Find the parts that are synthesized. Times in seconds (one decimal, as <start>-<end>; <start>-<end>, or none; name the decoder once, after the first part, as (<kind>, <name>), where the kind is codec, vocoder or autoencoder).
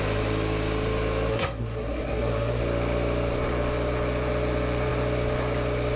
1.3-2.6 (codec, SNAC)